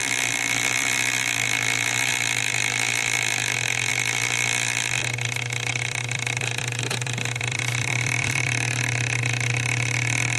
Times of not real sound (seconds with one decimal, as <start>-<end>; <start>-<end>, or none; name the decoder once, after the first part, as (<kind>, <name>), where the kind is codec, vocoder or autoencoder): 5.7-8.8 (vocoder, BigVGAN v2)